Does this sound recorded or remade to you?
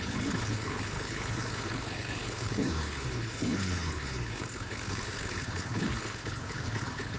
remade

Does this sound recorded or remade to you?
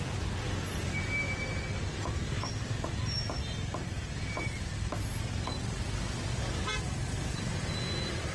recorded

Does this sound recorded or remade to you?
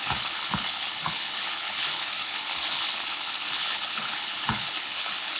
remade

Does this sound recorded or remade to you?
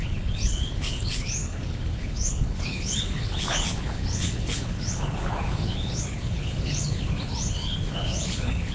remade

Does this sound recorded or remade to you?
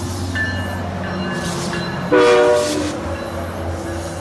recorded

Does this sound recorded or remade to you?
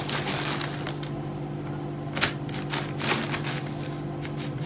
recorded